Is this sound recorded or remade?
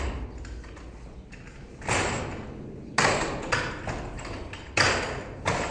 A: recorded